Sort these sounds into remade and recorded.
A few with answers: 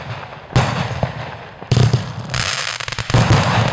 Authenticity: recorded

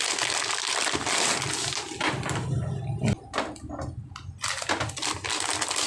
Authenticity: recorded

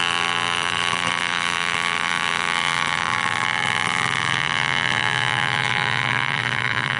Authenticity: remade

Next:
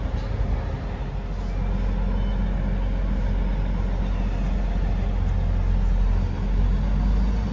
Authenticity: recorded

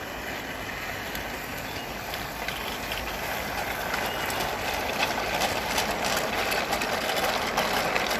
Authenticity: recorded